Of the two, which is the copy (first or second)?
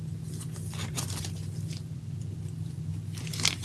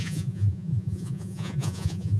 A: second